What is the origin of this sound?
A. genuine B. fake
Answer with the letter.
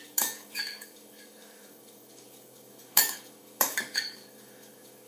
B